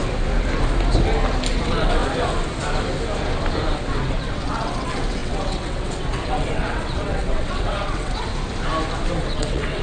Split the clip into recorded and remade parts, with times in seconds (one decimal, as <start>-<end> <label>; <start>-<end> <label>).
0.0-1.5 recorded; 1.5-2.0 remade; 2.0-4.3 recorded; 4.3-8.3 remade; 8.3-9.2 recorded; 9.2-9.8 remade